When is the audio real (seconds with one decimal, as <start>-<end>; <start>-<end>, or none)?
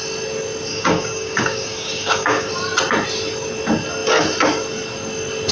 0.0-0.7; 2.5-5.5